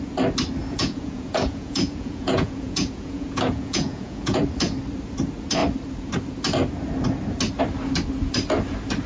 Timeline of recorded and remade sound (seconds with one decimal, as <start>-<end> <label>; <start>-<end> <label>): 0.0-0.6 recorded; 0.6-4.4 remade; 4.4-9.1 recorded